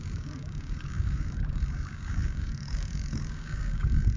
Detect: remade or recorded remade